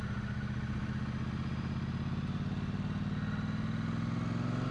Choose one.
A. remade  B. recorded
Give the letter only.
B